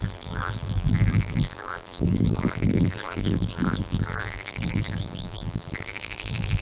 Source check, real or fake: fake